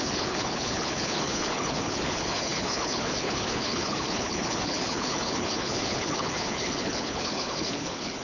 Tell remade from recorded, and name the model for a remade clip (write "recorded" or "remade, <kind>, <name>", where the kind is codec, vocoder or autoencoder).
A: remade, codec, HILCodec